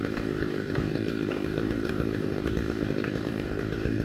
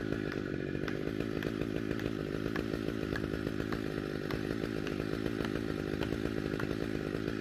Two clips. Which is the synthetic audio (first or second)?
first